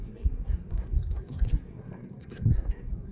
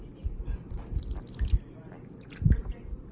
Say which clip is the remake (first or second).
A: first